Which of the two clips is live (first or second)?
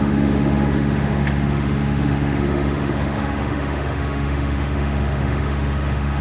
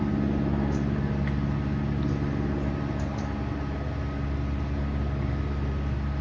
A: second